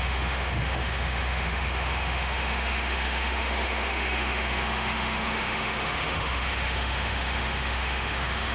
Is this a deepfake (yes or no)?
yes